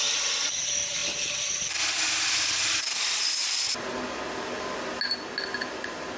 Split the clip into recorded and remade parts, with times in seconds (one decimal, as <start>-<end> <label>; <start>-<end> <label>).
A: 0.0-1.0 recorded; 1.0-1.7 remade; 1.7-3.4 recorded; 3.4-5.0 remade; 5.0-6.2 recorded